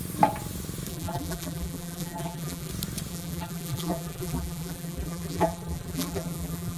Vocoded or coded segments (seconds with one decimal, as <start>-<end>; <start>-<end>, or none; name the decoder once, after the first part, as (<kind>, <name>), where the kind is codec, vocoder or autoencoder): 0.9-2.7 (vocoder, BigVGAN v2); 3.1-6.8